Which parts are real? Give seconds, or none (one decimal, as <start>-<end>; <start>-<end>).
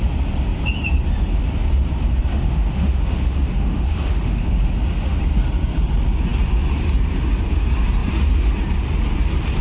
0.0-2.3; 4.6-9.6